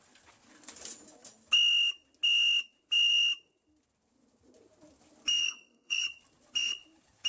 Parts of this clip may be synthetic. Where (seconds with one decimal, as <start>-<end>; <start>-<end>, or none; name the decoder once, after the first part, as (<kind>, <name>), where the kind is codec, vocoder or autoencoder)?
5.4-6.0 (codec, SNAC)